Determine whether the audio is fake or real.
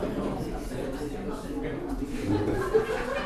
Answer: real